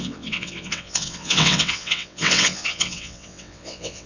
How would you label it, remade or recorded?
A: remade